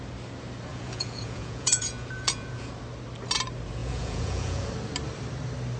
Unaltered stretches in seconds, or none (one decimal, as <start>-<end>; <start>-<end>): 0.0-0.7; 2.7-3.8; 4.7-5.8